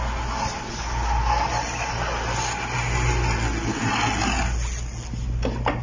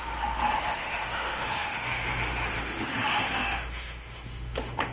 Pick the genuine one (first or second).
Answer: first